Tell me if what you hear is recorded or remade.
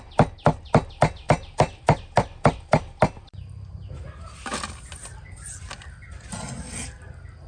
recorded